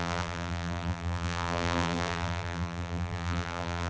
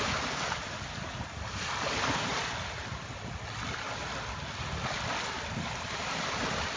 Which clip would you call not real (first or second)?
first